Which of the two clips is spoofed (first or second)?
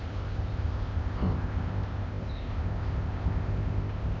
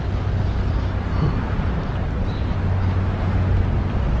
first